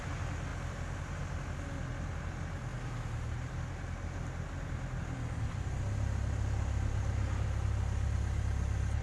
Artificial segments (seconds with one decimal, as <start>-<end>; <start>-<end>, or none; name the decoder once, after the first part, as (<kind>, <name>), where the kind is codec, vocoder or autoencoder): none